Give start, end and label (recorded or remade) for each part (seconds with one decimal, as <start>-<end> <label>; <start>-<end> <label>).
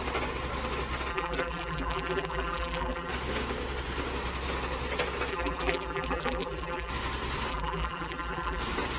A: 0.0-1.1 recorded; 1.1-3.1 remade; 3.1-5.3 recorded; 5.3-6.9 remade; 6.9-7.5 recorded; 7.5-8.6 remade; 8.6-9.0 recorded